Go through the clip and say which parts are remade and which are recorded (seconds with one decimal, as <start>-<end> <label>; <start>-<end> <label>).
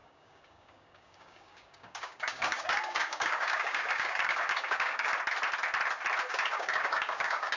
0.0-5.1 remade; 5.1-6.3 recorded; 6.3-7.6 remade